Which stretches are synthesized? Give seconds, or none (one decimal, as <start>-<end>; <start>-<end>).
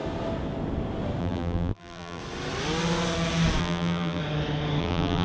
1.2-2.2; 3.6-4.2; 4.8-5.2